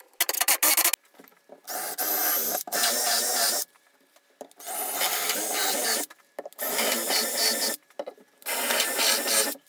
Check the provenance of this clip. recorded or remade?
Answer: recorded